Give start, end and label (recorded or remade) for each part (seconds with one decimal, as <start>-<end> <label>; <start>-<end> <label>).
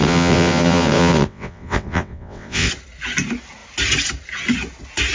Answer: 0.0-2.7 remade; 2.7-5.1 recorded